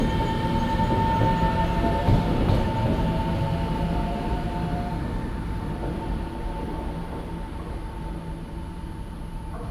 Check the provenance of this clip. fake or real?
real